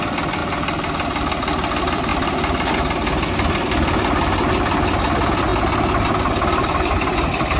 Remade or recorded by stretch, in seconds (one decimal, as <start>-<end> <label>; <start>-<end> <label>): 0.0-7.6 remade